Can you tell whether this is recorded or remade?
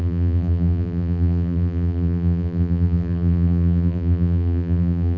remade